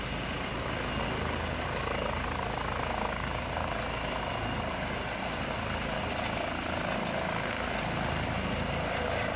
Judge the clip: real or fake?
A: real